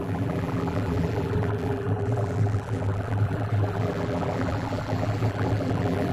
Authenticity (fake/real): fake